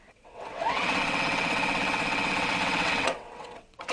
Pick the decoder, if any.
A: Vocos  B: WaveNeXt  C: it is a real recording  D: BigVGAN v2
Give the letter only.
B